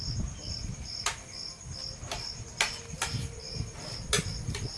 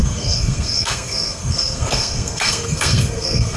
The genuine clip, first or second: first